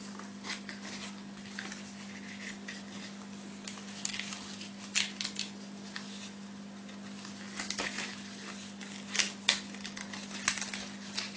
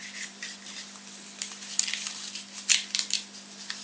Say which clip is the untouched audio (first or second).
first